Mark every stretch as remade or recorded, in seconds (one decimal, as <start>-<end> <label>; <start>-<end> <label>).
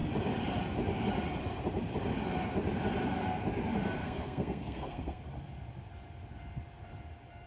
0.0-4.0 recorded; 4.0-5.2 remade; 5.2-7.5 recorded